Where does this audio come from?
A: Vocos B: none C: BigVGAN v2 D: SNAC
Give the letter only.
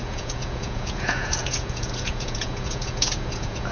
A